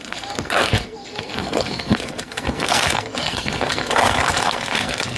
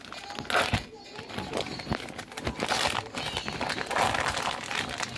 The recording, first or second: second